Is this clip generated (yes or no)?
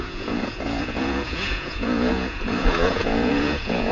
yes